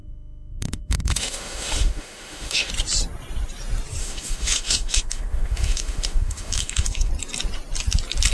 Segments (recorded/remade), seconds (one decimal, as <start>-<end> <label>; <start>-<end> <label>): 0.0-2.7 remade; 2.7-4.0 recorded; 4.0-7.1 remade; 7.1-8.3 recorded